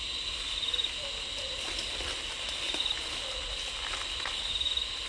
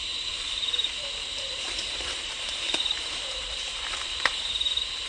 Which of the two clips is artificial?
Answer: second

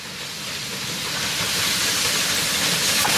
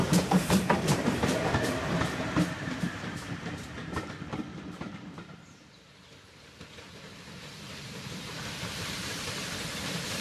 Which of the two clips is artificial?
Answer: second